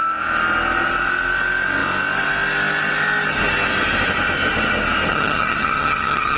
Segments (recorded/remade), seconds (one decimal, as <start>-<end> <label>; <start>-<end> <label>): 0.0-5.1 recorded; 5.1-6.4 remade